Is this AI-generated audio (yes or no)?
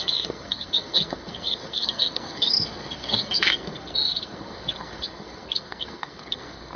yes